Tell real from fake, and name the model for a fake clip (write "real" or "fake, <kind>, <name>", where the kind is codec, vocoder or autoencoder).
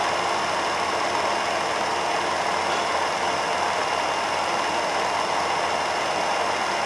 real